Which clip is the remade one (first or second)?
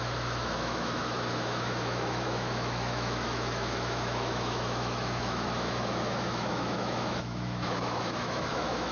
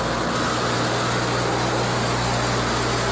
first